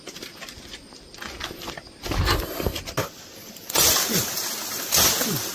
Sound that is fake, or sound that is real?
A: real